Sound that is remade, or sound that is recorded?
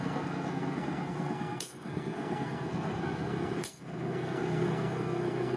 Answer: remade